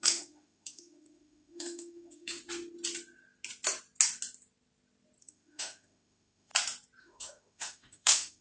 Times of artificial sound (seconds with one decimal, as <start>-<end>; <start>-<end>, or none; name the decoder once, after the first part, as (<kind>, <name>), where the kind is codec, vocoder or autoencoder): 0.0-2.4 (autoencoder, DAC-VAE); 5.2-6.5; 7.0-8.4